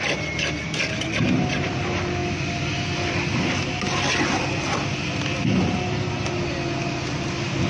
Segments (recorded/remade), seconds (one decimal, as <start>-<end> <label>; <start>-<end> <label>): 0.0-7.7 recorded

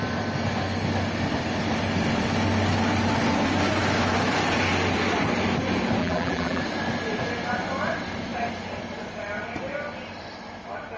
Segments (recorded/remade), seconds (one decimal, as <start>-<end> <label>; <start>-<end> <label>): 0.0-6.0 recorded; 6.0-6.6 remade; 6.6-11.0 recorded

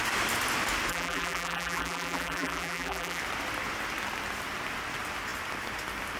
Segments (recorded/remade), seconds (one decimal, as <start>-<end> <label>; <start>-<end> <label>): 0.0-0.9 recorded; 0.9-3.2 remade; 3.2-6.2 recorded

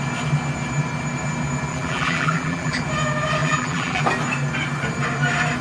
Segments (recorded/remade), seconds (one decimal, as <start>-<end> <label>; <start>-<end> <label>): 0.0-1.7 recorded; 1.7-2.8 remade; 2.8-3.4 recorded; 3.4-4.0 remade; 4.0-5.6 recorded

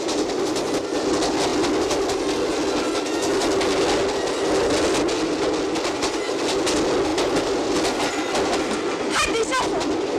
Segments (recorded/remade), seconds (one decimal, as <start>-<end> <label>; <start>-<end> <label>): 0.0-10.2 recorded

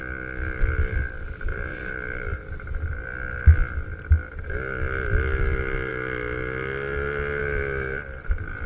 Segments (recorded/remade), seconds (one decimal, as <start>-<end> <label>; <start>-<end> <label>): 0.0-1.5 recorded; 1.5-2.4 remade; 2.4-8.7 recorded

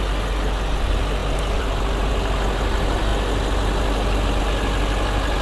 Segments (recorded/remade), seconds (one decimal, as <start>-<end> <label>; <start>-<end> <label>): 0.0-1.2 recorded; 1.2-2.1 remade; 2.1-5.4 recorded